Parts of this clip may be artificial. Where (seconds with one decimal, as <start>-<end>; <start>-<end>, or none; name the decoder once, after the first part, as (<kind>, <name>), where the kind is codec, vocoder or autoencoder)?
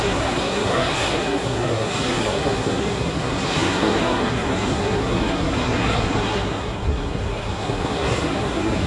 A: 0.0-8.9 (codec, SNAC)